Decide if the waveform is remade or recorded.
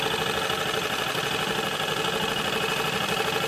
recorded